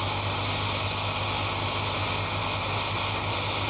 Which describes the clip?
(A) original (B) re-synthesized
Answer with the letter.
A